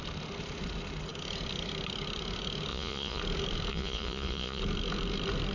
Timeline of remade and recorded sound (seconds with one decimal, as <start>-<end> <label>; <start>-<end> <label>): 0.0-2.7 recorded; 2.7-3.2 remade; 3.2-3.7 recorded; 3.7-4.6 remade; 4.6-5.5 recorded